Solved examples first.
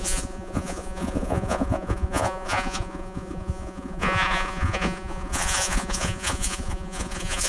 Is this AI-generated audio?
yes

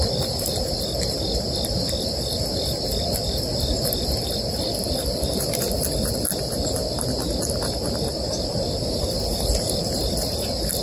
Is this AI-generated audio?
no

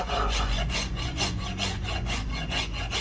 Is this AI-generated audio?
yes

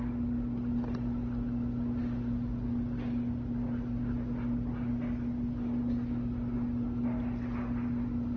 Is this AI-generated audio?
no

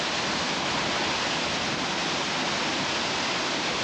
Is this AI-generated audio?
no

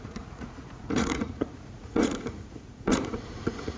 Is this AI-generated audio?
yes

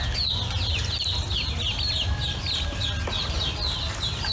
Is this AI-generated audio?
no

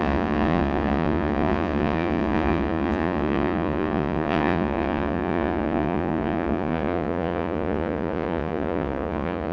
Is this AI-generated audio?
yes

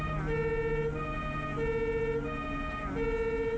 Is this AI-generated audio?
no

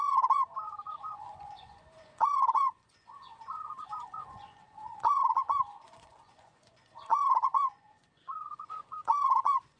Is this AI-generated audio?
yes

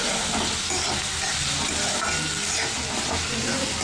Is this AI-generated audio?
no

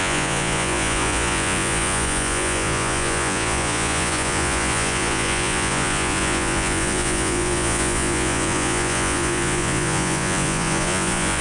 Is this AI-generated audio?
yes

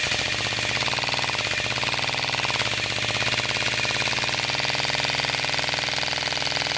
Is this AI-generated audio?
no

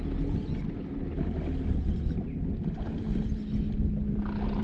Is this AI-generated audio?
no